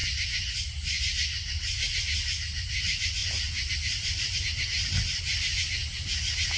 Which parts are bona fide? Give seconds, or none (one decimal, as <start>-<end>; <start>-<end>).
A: 0.0-3.2; 5.2-6.6